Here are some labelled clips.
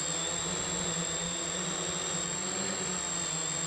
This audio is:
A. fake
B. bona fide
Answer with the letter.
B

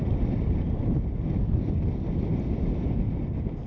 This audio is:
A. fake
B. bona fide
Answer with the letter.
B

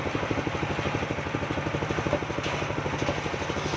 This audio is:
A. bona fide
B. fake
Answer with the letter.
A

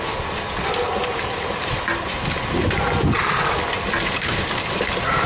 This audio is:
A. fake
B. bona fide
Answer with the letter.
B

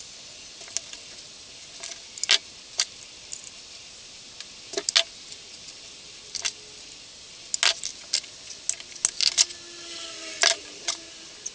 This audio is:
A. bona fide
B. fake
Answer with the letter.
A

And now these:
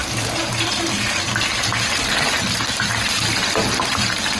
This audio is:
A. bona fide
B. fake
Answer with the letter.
A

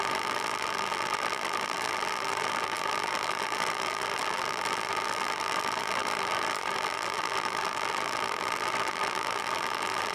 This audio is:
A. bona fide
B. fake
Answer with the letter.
B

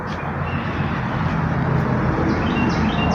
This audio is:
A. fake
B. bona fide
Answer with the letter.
B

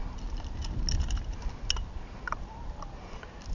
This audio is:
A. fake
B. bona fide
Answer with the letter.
B